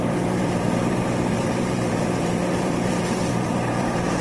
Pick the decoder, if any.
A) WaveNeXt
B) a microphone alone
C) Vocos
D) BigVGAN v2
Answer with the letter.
D